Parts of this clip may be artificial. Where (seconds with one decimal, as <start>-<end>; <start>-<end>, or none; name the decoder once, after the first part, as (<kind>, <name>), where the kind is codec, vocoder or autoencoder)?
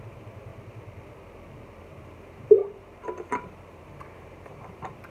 0.0-0.5 (vocoder, BigVGAN v2); 1.8-5.1